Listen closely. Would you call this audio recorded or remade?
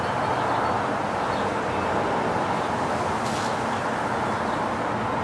recorded